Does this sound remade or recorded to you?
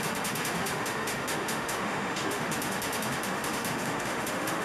remade